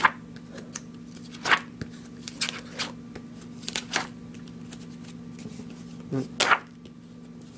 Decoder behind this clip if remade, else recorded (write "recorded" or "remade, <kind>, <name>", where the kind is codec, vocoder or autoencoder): recorded